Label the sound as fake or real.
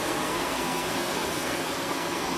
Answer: fake